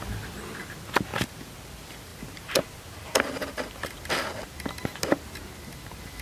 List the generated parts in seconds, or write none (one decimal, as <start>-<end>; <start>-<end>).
none